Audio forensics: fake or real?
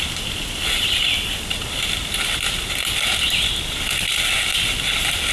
real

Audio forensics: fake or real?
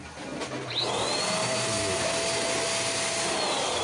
real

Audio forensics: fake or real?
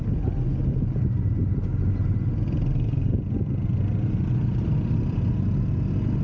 real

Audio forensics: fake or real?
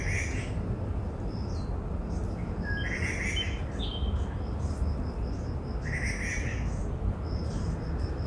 real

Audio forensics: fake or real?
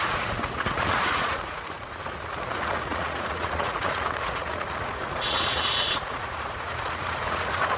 fake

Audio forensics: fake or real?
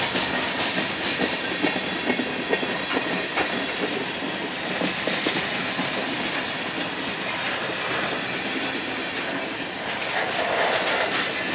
real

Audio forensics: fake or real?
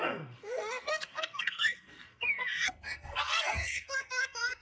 fake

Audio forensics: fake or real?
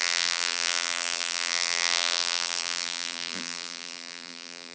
fake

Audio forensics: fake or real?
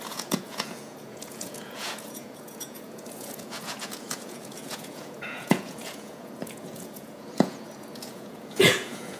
fake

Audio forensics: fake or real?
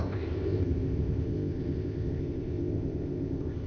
fake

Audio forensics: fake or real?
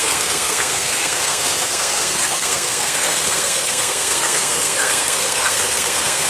fake